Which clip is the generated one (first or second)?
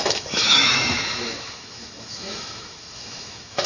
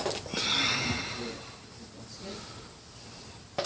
first